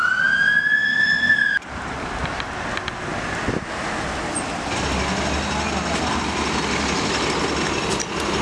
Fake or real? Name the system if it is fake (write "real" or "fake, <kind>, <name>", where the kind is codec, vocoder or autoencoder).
real